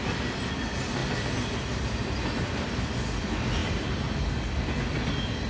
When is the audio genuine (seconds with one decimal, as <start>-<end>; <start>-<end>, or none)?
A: 0.0-5.5